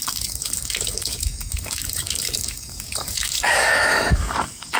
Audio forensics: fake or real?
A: fake